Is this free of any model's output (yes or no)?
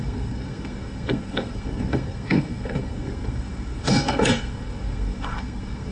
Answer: no